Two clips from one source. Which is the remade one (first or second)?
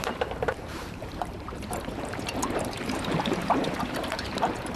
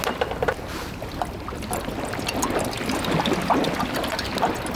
first